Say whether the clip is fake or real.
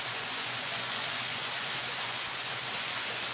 fake